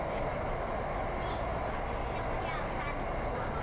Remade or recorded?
recorded